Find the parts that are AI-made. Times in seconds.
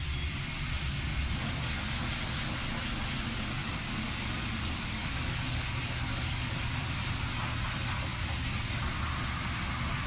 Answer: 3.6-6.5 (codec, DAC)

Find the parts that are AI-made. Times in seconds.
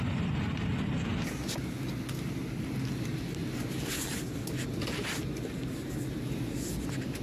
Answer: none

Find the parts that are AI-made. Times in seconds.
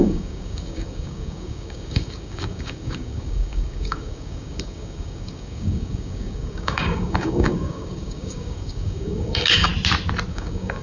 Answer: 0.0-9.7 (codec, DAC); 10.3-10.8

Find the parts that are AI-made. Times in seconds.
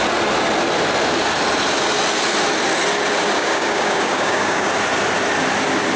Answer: 3.4-4.7 (codec, DAC)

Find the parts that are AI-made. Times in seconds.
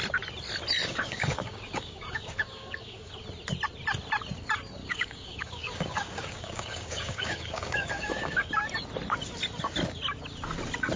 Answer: 0.8-3.1 (codec, DAC); 4.8-8.5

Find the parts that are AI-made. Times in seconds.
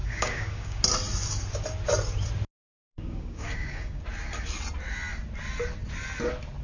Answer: 0.0-0.8 (codec, DAC); 2.6-4.0